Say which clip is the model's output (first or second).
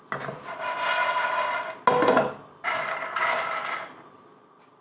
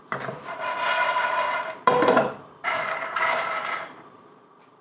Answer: second